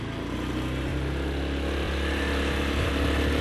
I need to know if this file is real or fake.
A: real